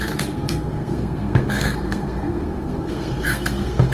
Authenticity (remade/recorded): remade